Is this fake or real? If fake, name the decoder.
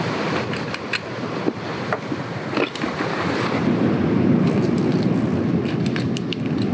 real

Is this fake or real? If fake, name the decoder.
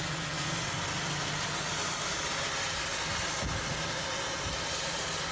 real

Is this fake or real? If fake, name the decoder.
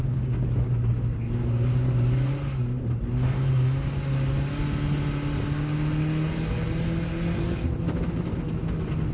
real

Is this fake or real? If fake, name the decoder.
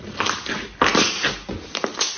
real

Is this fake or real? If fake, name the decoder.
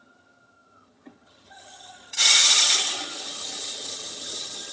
fake, vocoder, HiFi-GAN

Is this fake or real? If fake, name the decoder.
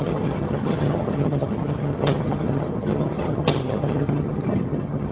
fake, vocoder, HiFi-GAN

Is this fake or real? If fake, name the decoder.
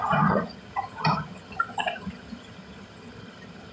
fake, vocoder, HiFi-GAN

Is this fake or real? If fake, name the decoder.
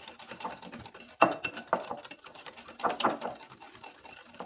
real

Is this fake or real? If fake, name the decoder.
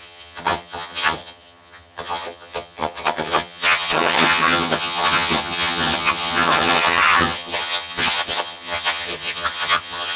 fake, vocoder, HiFi-GAN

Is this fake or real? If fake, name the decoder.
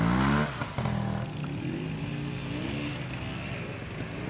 real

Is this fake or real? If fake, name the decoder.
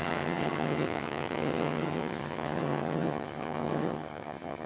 fake, vocoder, HiFi-GAN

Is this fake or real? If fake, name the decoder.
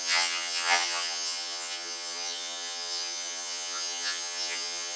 fake, vocoder, HiFi-GAN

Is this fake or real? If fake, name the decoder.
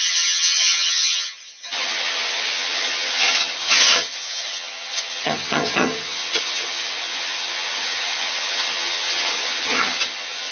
fake, vocoder, HiFi-GAN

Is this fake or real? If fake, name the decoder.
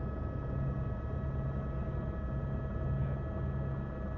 real